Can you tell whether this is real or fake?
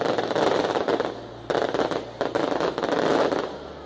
real